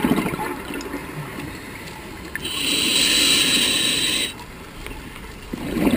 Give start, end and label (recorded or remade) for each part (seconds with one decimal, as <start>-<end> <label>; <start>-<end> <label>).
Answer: 0.0-1.0 recorded; 1.0-2.0 remade; 2.0-6.0 recorded